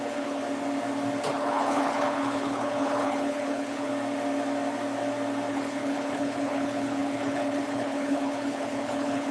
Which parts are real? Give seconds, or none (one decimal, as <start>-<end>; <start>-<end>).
0.4-1.3; 3.9-5.5